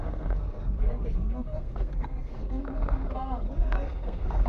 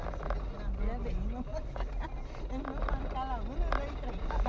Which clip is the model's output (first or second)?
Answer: first